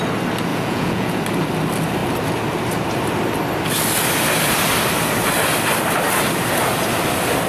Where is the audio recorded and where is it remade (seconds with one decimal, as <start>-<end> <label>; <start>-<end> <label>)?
0.0-0.5 recorded; 0.5-1.2 remade; 1.2-7.5 recorded

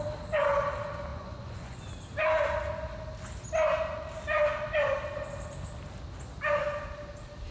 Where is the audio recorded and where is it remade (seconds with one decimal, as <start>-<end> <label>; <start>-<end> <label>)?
0.0-1.1 recorded; 1.1-1.8 remade; 1.8-7.5 recorded

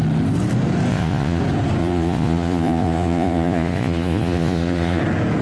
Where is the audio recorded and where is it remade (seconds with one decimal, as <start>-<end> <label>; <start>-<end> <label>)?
0.0-0.9 recorded; 0.9-1.4 remade; 1.4-1.8 recorded; 1.8-5.0 remade; 5.0-5.4 recorded